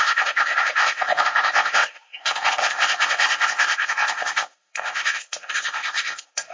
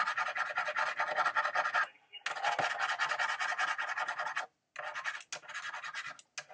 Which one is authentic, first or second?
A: second